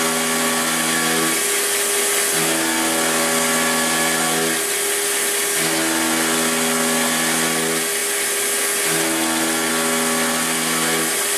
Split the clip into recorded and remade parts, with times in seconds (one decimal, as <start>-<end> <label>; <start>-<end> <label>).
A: 0.0-11.4 recorded

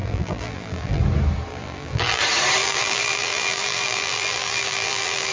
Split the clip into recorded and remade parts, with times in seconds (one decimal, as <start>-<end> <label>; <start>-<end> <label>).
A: 0.0-1.0 remade; 1.0-1.5 recorded; 1.5-2.2 remade; 2.2-2.6 recorded; 2.6-5.3 remade

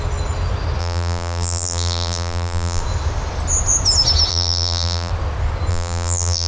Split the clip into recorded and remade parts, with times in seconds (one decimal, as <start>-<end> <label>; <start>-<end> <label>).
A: 0.0-0.8 recorded; 0.8-2.8 remade; 2.8-4.3 recorded; 4.3-5.1 remade; 5.1-5.7 recorded; 5.7-6.5 remade

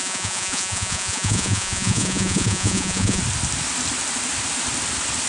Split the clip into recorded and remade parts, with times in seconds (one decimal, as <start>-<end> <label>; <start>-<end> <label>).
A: 0.0-3.2 remade; 3.2-5.3 recorded